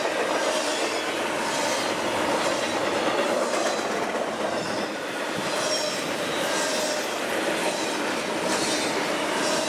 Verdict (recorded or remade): recorded